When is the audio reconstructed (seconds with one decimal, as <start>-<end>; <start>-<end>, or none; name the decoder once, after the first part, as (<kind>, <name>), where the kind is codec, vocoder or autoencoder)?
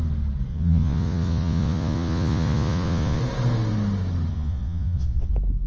0.5-3.2 (vocoder, Vocos); 4.3-5.3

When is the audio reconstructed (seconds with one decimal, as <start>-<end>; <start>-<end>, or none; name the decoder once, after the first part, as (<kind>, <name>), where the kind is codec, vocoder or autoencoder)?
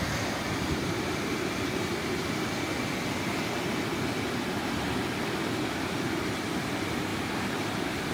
7.1-8.1 (vocoder, BigVGAN v2)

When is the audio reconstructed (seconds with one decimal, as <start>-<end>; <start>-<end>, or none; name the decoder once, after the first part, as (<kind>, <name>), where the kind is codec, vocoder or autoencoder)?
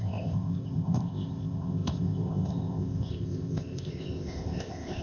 0.0-5.0 (codec, ZipCodec)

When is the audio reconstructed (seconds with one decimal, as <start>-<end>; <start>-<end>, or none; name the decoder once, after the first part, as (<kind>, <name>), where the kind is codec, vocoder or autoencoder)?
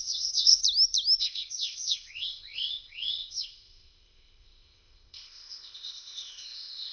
0.0-0.6 (codec, ZipCodec); 1.2-6.9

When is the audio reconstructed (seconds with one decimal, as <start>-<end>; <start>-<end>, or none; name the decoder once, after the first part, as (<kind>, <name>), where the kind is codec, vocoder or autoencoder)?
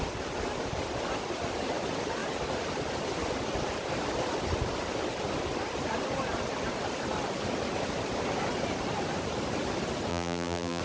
10.1-10.8 (vocoder, BigVGAN v2)